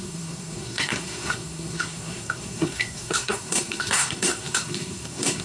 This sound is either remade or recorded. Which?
remade